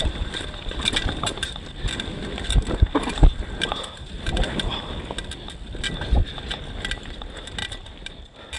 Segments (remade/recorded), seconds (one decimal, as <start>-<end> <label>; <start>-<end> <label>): 0.0-8.6 recorded